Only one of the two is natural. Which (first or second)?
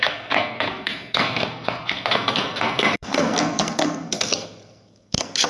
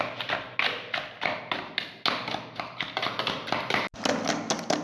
second